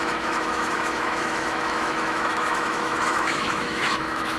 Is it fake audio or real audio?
fake